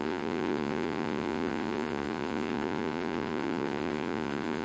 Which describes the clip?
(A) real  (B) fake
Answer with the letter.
B